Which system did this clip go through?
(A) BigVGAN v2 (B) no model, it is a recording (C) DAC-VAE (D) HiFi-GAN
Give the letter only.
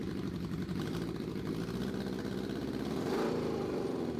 A